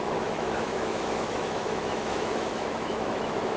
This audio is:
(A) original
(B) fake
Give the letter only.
B